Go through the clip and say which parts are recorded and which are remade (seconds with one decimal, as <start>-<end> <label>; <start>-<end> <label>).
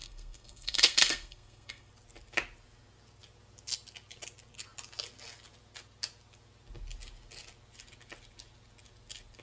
0.0-1.9 remade; 1.9-9.4 recorded